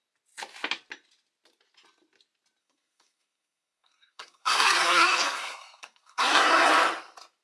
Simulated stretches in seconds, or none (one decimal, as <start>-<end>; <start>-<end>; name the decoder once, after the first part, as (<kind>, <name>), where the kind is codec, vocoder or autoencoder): 2.6-6.7 (codec, SNAC)